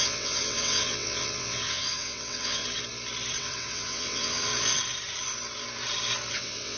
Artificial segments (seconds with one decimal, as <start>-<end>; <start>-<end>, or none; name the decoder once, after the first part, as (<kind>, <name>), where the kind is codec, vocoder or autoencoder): 0.0-2.6 (vocoder, WaveNeXt); 3.4-4.5; 6.3-6.8